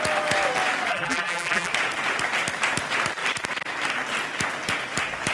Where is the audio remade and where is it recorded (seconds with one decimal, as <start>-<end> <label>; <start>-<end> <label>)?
0.0-0.9 recorded; 0.9-1.7 remade; 1.7-5.3 recorded